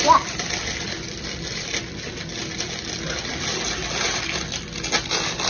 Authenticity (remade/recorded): recorded